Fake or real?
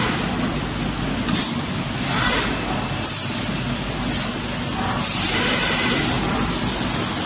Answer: real